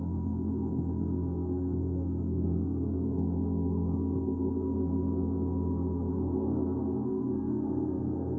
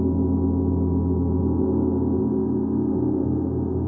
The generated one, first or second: first